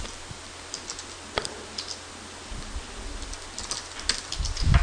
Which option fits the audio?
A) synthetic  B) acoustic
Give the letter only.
B